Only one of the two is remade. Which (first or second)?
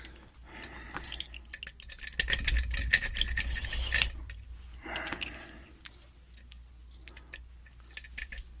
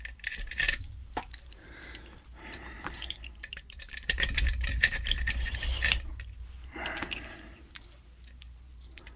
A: second